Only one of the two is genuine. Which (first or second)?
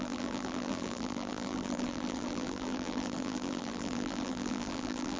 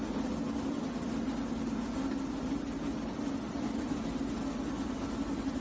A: second